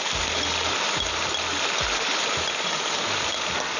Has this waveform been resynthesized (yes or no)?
no